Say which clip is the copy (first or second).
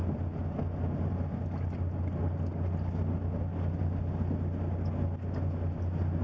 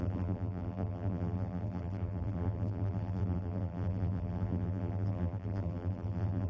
second